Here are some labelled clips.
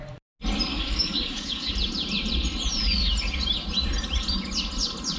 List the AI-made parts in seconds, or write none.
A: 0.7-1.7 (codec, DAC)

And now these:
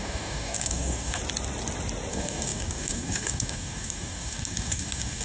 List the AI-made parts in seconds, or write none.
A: 0.0-1.2 (codec, DAC); 2.1-5.2

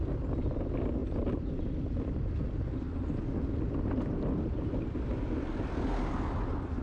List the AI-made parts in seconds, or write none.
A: none